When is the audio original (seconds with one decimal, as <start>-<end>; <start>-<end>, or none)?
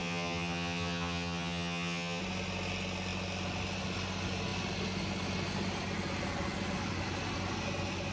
2.2-8.1